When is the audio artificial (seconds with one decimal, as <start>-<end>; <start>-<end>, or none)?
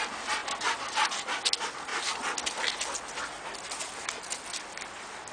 0.4-1.1